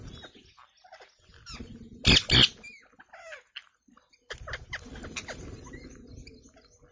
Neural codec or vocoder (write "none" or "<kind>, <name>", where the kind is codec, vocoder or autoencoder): none